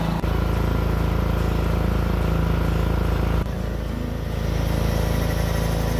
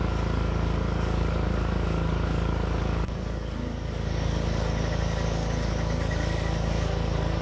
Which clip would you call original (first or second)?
first